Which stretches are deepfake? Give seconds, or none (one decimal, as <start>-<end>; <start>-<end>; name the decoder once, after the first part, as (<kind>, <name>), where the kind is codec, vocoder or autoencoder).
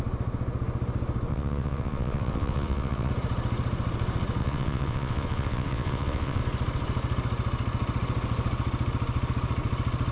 1.3-3.1 (vocoder, WaveNeXt); 4.4-6.4